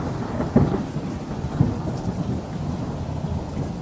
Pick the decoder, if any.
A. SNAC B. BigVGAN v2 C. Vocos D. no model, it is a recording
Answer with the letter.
D